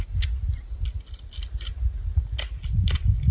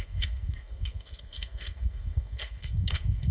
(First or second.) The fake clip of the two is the second